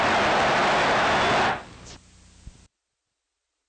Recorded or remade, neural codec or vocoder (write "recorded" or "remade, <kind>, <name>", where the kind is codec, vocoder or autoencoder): recorded